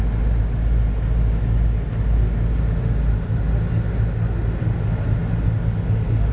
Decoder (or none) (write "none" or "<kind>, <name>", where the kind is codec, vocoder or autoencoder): none